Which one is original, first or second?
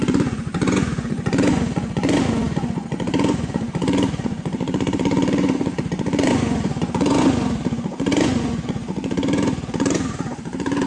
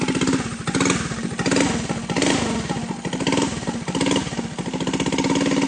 second